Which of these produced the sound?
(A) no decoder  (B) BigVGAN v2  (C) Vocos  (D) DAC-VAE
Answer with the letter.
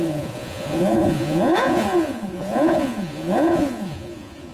C